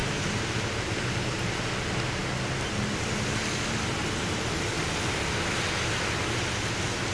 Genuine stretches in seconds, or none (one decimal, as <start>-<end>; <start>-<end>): 0.0-7.1